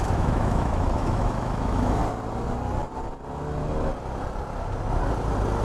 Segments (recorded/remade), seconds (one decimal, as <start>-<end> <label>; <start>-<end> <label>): 0.0-2.0 remade; 2.0-5.6 recorded

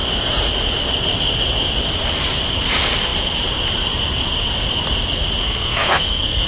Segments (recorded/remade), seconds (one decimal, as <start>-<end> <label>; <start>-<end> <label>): 0.0-5.4 recorded; 5.4-6.5 remade

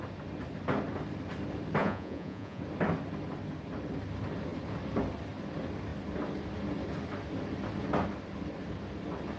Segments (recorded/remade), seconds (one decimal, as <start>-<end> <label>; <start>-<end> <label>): 0.0-1.8 recorded; 1.8-2.6 remade; 2.6-9.4 recorded